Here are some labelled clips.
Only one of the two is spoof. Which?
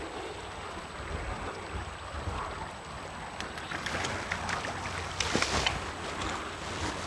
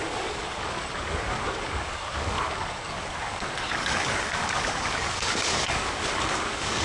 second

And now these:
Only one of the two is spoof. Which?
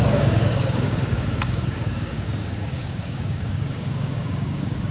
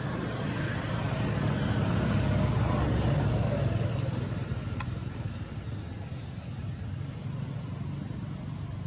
first